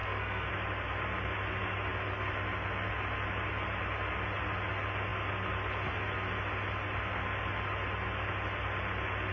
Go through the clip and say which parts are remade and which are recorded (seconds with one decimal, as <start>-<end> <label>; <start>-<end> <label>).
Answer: 0.0-0.5 remade; 0.5-9.3 recorded

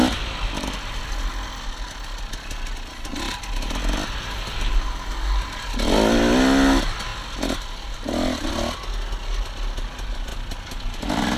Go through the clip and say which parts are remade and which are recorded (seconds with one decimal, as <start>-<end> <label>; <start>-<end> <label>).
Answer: 0.0-11.4 recorded

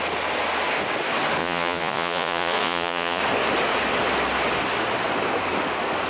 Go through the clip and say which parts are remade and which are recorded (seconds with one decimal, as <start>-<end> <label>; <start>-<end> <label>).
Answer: 0.0-1.4 recorded; 1.4-3.2 remade; 3.2-6.1 recorded